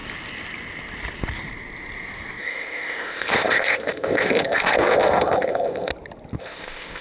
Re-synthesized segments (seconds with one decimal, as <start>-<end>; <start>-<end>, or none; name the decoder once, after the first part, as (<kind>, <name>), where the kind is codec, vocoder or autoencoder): 2.4-5.9 (codec, ZipCodec); 6.4-7.0